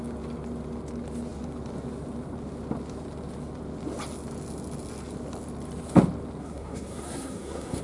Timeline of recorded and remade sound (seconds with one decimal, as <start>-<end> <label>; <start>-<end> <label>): 0.0-6.4 recorded; 6.4-7.8 remade

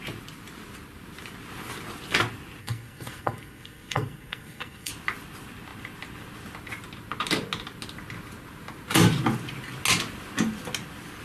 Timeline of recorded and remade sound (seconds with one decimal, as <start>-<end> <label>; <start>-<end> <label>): 0.0-2.6 recorded; 2.6-4.9 remade; 4.9-11.2 recorded

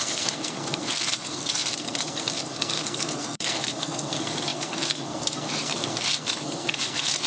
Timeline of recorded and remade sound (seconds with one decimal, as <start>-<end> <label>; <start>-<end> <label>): 0.0-7.3 remade

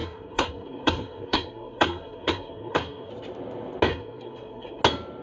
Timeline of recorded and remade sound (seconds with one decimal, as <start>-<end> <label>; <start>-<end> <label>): 0.0-3.1 remade; 3.1-3.9 recorded; 3.9-4.8 remade; 4.8-5.2 recorded

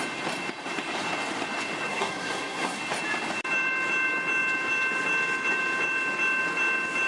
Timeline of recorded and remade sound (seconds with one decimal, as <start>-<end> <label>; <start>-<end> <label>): 0.0-1.9 recorded; 1.9-2.8 remade; 2.8-7.1 recorded